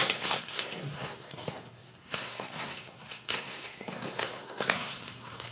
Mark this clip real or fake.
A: fake